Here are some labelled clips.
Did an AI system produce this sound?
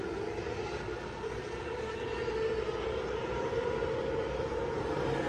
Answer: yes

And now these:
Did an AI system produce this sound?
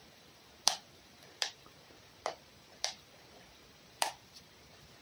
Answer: yes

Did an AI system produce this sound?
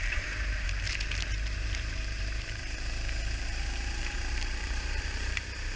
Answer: yes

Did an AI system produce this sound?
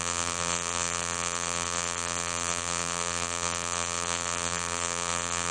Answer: yes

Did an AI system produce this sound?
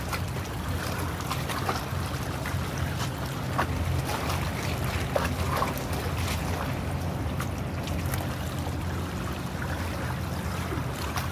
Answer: no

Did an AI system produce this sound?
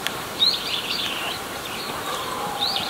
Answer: yes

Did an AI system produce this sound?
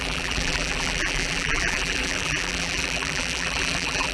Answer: yes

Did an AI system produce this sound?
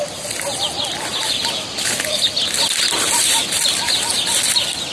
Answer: no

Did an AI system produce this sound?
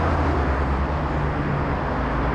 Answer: no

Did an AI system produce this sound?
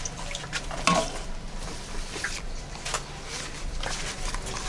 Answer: no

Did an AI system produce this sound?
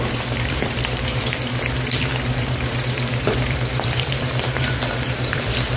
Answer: yes